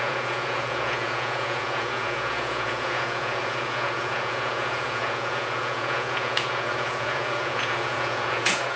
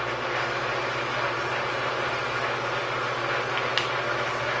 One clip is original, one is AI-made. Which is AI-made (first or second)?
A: first